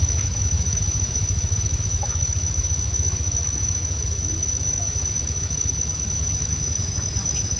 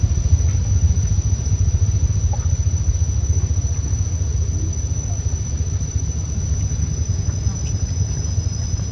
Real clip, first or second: second